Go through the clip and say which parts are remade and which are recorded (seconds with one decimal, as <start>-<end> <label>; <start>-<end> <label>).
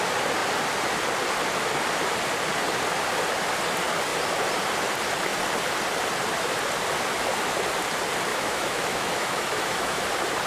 0.0-8.3 recorded; 8.3-10.0 remade; 10.0-10.5 recorded